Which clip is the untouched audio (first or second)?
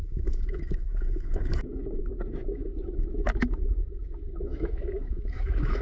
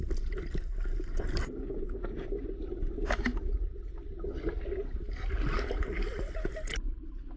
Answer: second